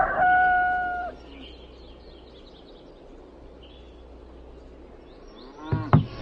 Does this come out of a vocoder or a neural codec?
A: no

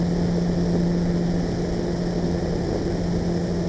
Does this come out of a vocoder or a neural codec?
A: no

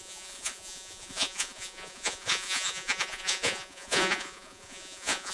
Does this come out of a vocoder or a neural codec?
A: yes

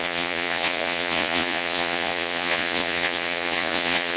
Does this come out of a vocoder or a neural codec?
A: yes